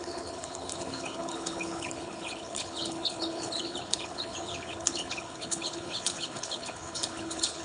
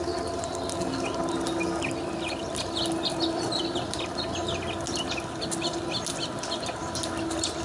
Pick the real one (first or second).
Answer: second